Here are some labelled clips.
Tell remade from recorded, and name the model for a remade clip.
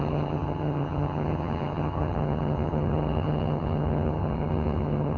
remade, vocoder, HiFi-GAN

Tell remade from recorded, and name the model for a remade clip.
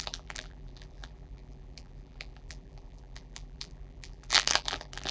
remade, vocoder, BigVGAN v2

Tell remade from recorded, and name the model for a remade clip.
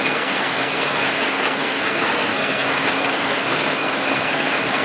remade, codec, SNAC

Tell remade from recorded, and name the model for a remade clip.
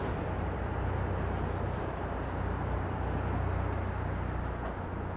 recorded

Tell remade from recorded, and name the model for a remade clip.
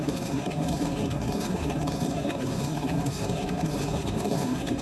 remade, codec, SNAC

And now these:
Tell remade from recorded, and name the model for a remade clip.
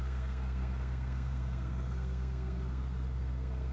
remade, codec, SNAC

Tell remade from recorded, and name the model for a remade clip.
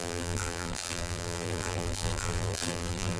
remade, vocoder, BigVGAN v2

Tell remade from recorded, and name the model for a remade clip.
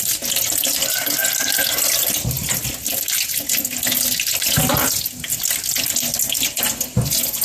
recorded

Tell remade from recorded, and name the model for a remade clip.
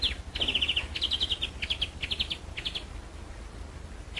recorded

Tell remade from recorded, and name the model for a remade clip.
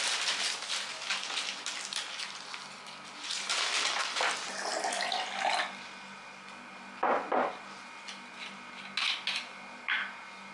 recorded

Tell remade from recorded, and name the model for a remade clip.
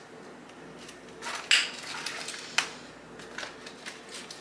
recorded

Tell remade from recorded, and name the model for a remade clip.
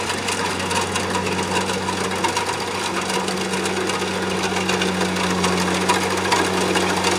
recorded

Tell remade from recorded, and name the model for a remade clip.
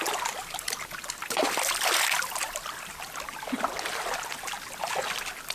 recorded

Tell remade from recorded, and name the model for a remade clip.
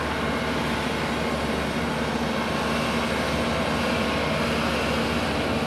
recorded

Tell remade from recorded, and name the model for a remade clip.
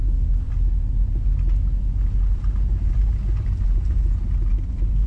recorded